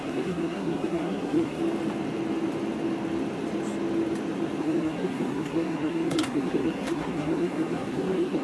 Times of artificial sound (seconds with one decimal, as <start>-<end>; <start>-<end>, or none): 0.0-1.6; 4.6-8.4